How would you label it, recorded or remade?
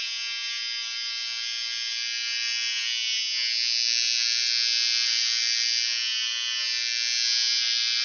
recorded